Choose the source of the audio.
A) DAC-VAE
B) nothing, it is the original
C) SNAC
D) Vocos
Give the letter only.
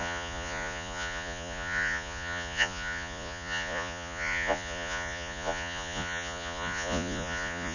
D